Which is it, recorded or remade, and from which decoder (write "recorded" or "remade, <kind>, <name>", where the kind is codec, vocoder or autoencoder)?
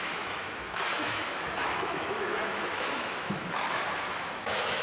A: remade, autoencoder, DAC-VAE